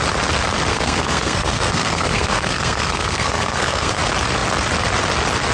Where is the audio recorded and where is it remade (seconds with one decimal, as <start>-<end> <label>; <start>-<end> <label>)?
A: 0.0-0.7 recorded; 0.7-4.0 remade; 4.0-5.5 recorded